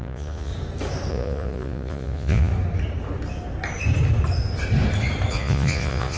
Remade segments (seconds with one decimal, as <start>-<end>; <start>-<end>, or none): 0.0-0.5; 1.1-2.5; 5.3-6.2